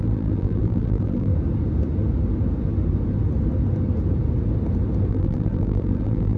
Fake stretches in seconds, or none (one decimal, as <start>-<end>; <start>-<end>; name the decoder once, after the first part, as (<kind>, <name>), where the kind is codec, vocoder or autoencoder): 0.0-1.3 (vocoder, BigVGAN v2); 5.1-6.4